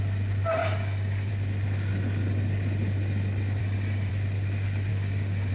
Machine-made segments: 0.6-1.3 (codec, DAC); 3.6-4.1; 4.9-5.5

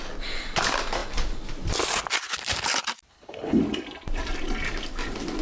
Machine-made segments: 3.1-3.6 (codec, HILCodec)

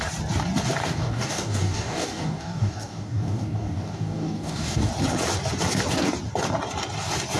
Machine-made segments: 0.8-4.9 (codec, DAC)

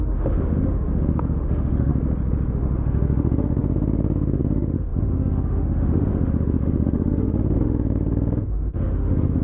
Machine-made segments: 0.0-1.9 (autoencoder, DAC-VAE); 2.5-9.4

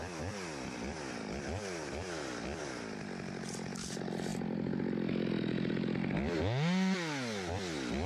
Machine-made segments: none

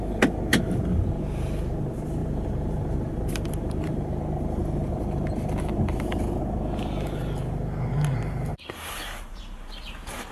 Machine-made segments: 0.5-1.2 (vocoder, BigVGAN v2); 2.2-6.4; 8.5-9.8

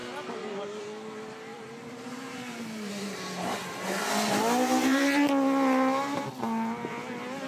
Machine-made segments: 1.5-4.1 (vocoder, BigVGAN v2)

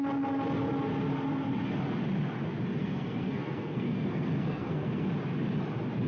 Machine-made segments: 2.8-5.1 (codec, SNAC)